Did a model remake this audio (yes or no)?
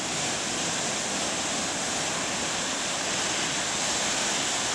no